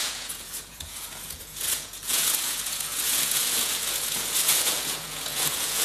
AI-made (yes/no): yes